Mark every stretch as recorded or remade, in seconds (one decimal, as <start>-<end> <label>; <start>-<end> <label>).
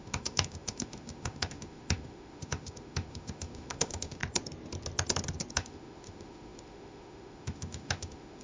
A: 0.0-4.2 remade; 4.2-5.5 recorded; 5.5-8.4 remade